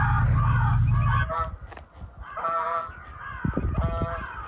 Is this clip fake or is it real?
real